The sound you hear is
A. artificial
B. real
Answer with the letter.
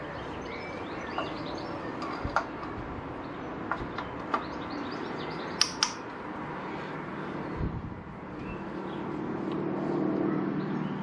B